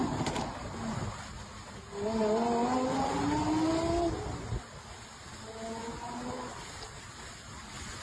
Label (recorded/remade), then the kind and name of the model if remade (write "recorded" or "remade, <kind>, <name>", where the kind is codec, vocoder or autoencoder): recorded